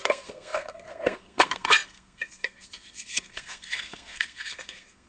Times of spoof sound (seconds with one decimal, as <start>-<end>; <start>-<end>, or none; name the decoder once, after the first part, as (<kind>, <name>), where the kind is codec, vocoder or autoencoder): 0.0-5.1 (codec, SNAC)